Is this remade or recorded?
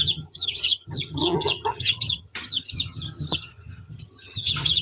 remade